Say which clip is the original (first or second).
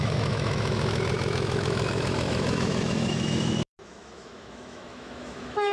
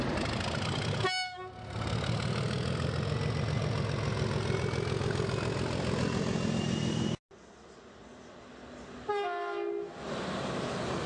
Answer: second